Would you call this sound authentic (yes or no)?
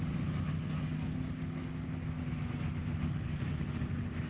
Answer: yes